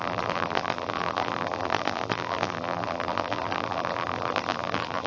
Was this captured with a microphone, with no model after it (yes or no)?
no